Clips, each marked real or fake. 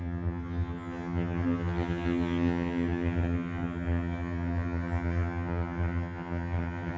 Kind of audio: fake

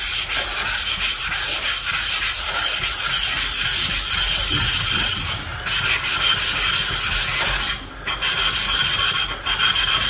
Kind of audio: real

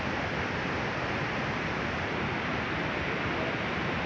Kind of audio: real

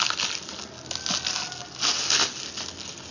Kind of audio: real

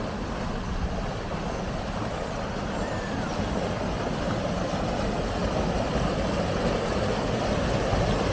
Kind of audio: real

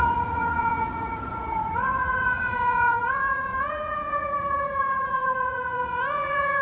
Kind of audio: fake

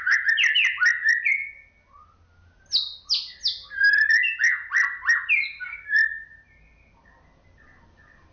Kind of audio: real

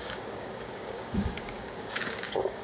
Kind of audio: fake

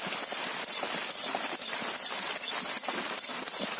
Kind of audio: real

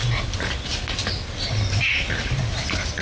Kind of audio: real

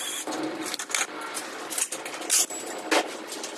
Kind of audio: real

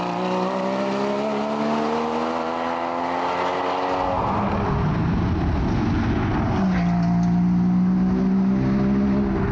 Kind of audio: real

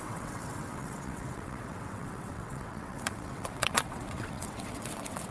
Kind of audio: fake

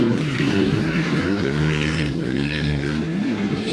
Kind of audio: fake